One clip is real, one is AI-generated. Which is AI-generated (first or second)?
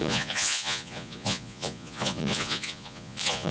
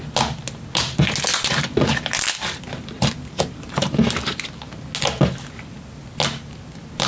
first